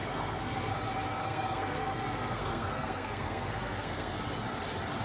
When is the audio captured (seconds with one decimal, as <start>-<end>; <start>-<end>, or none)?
0.7-1.2; 4.2-5.0